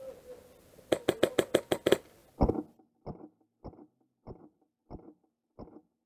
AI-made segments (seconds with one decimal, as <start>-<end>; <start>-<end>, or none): none